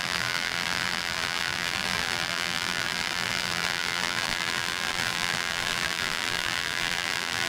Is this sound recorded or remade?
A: remade